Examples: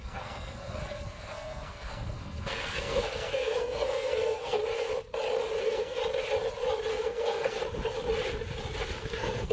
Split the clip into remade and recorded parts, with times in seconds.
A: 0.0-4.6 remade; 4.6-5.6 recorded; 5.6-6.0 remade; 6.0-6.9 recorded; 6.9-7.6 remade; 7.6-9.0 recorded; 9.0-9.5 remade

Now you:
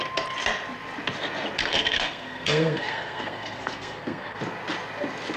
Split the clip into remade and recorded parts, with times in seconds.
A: 0.0-1.6 recorded; 1.6-4.4 remade; 4.4-5.4 recorded

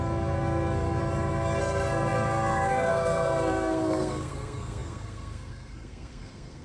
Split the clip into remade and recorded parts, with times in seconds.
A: 0.0-1.0 remade; 1.0-1.6 recorded; 1.6-6.6 remade

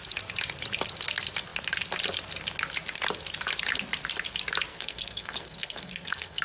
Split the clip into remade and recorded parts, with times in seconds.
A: 0.0-4.7 recorded; 4.7-6.4 remade